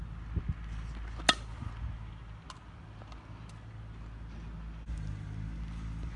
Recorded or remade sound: recorded